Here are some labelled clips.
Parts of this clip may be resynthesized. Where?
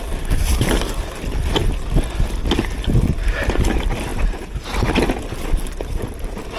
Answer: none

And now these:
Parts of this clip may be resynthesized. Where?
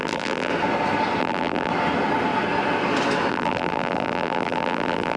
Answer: 0.0-0.5 (vocoder, BigVGAN v2); 1.2-1.7; 3.3-5.2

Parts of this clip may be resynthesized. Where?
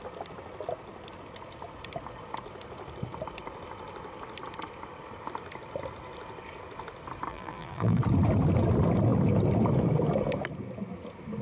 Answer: 7.3-8.0 (vocoder, BigVGAN v2)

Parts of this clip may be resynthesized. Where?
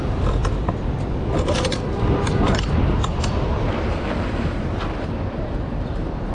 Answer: 0.0-0.4 (vocoder, BigVGAN v2); 2.1-3.1; 3.6-6.3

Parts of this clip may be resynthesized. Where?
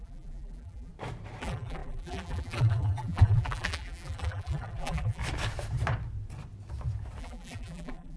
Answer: 0.0-0.9 (vocoder, BigVGAN v2); 1.4-5.2; 7.2-8.2